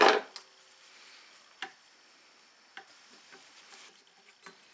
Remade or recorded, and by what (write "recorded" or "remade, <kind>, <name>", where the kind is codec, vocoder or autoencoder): recorded